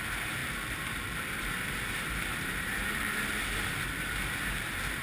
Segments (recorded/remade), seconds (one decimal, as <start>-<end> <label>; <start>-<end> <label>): 0.0-0.4 recorded; 0.4-3.4 remade; 3.4-5.0 recorded